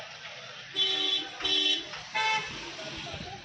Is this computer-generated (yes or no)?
no